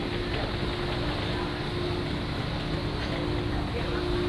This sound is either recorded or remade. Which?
recorded